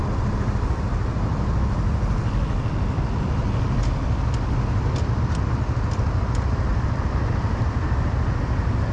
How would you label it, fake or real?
real